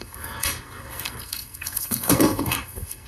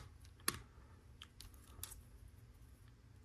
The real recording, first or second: second